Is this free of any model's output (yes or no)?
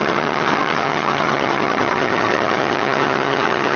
no